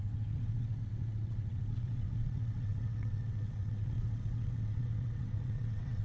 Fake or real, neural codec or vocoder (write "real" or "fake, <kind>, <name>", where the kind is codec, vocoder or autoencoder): fake, vocoder, WaveNeXt